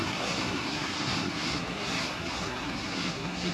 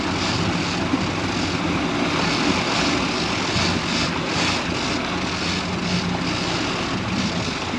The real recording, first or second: second